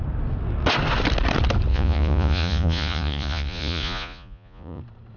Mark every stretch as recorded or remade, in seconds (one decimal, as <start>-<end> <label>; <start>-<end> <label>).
0.0-1.7 recorded; 1.7-4.8 remade; 4.8-5.2 recorded